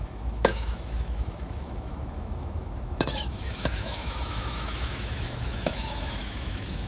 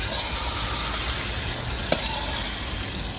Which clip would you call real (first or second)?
second